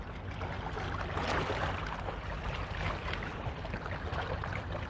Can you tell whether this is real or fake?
real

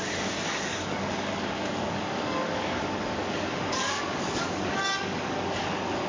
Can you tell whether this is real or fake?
fake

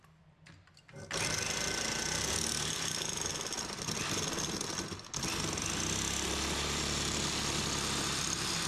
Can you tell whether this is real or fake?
real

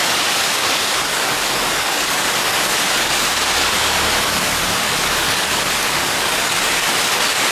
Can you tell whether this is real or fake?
fake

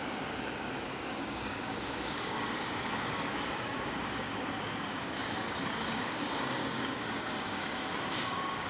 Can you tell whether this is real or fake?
fake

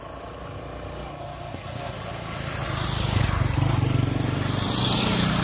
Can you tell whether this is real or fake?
real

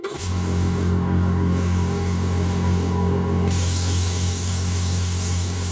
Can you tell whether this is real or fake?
fake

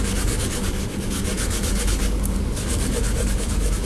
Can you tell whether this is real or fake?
fake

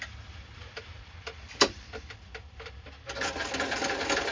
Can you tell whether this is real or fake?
real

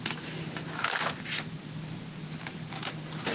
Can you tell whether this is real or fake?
real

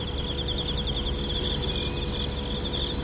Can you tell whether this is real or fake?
real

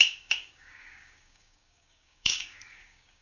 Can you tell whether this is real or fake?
fake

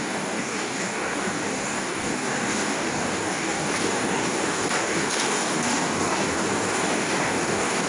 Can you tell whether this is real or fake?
fake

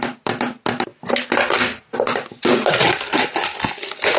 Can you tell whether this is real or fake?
real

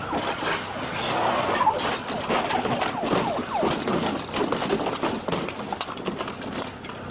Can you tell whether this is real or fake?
real